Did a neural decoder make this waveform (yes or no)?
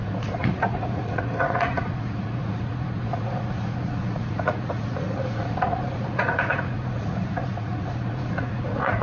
yes